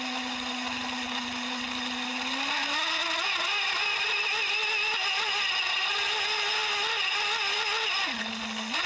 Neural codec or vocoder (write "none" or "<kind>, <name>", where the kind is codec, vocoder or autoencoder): none